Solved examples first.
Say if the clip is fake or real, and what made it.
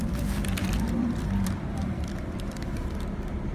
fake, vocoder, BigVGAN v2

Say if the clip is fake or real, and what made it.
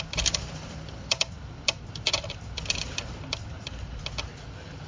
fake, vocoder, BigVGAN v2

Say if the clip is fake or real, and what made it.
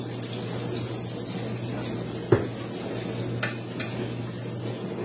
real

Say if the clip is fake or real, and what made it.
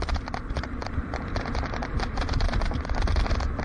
fake, vocoder, BigVGAN v2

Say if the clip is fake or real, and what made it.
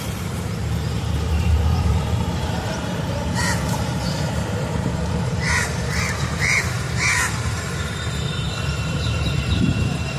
fake, vocoder, BigVGAN v2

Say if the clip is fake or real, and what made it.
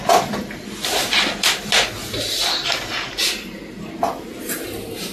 real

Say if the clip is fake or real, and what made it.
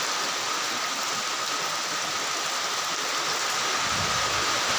real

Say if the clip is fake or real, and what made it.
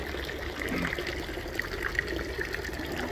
real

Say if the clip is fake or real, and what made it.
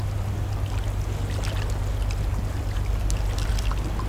real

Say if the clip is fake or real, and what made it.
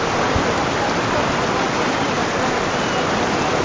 fake, vocoder, BigVGAN v2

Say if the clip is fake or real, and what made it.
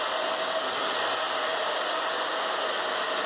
real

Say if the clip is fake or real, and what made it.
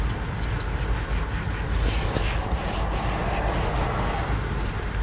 real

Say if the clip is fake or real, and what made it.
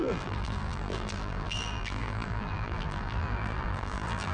fake, vocoder, BigVGAN v2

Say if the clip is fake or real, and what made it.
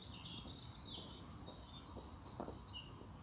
real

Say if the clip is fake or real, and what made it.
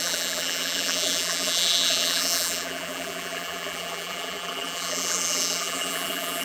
fake, vocoder, BigVGAN v2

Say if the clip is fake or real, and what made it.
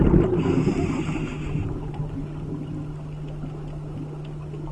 real